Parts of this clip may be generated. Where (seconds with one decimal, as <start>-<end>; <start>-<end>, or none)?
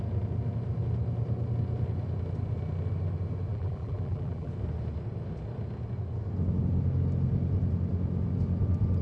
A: 3.5-4.5